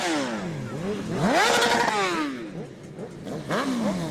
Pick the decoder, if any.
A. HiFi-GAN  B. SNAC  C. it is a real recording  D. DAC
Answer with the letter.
C